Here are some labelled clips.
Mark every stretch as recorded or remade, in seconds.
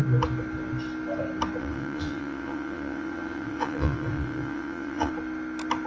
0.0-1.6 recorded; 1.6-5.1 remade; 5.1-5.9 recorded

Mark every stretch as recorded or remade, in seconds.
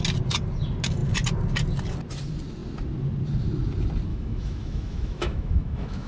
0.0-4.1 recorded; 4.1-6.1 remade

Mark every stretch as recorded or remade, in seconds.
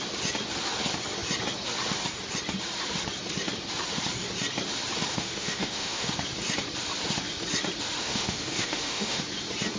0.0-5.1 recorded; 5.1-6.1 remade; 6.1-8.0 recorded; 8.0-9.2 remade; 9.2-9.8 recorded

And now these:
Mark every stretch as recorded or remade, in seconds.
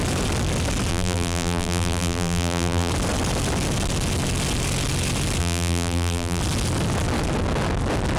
0.0-0.9 recorded; 0.9-2.9 remade; 2.9-5.4 recorded; 5.4-6.4 remade; 6.4-8.2 recorded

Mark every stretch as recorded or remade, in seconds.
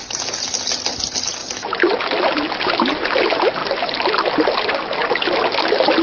0.0-1.4 recorded; 1.4-2.0 remade; 2.0-6.0 recorded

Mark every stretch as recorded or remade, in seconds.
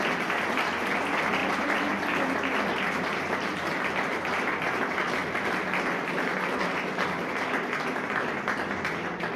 0.0-9.4 recorded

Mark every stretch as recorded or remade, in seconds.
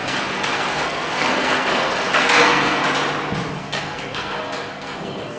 0.0-2.8 remade; 2.8-3.5 recorded; 3.5-5.4 remade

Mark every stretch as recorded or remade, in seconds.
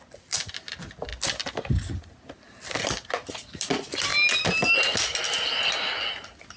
0.0-6.6 recorded